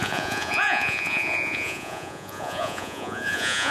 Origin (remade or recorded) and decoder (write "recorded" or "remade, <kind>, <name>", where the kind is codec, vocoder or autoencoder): remade, vocoder, Vocos